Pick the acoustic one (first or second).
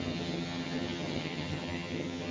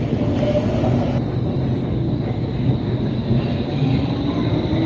second